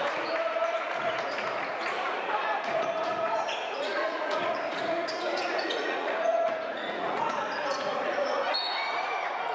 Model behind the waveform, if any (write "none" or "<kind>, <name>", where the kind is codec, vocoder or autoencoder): vocoder, Vocos